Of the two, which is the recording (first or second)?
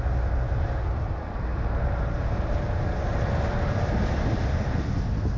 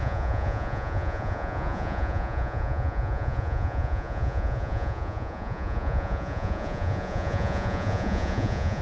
first